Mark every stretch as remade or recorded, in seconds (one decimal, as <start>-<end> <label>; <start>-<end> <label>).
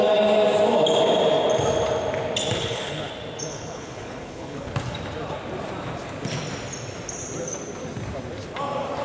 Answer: 0.0-2.6 recorded; 2.6-3.1 remade; 3.1-3.5 recorded; 3.5-4.7 remade; 4.7-9.0 recorded